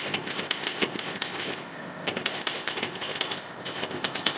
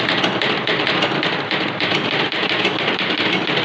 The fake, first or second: first